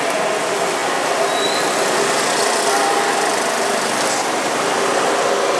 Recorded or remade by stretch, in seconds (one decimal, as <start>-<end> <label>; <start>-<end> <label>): 0.0-5.6 recorded